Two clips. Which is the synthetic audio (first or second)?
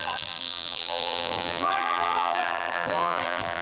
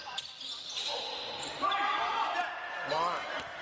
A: first